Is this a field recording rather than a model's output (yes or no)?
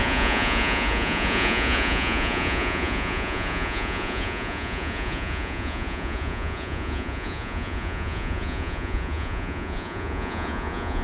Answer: no